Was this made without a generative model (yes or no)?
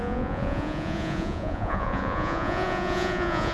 no